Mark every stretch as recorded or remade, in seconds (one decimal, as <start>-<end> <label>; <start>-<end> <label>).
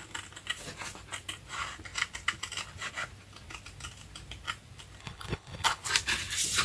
0.0-5.0 recorded; 5.0-5.8 remade; 5.8-6.6 recorded